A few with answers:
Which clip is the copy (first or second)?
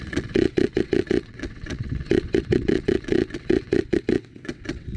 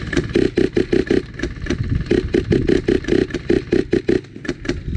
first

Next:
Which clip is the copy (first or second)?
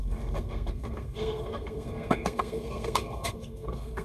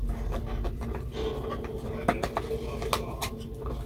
first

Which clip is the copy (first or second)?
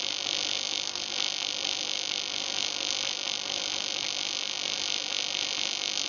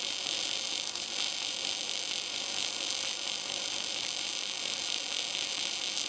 second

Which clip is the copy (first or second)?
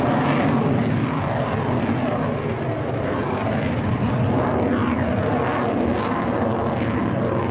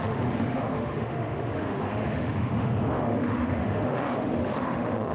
second